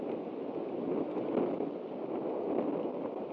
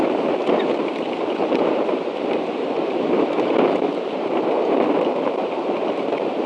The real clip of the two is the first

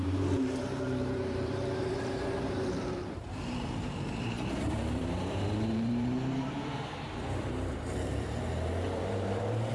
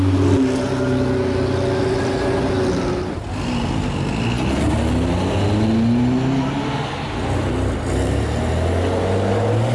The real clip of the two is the second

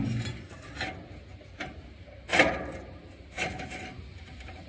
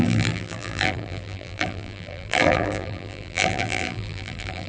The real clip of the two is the first